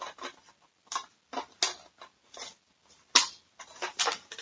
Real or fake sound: real